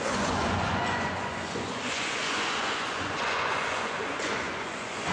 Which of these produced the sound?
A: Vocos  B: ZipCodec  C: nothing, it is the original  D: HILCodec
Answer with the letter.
A